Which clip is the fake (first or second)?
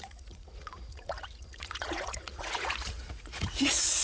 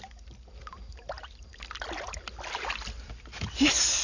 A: first